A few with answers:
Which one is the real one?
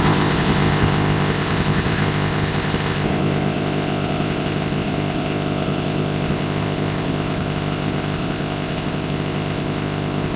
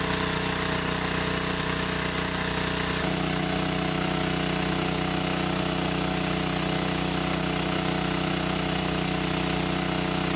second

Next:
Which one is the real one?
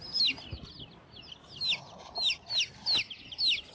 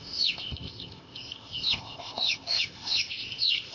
first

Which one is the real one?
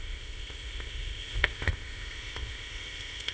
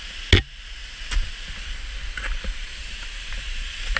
second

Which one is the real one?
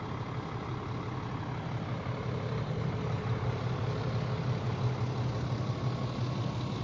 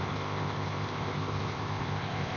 first